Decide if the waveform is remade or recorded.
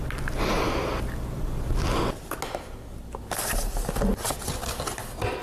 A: recorded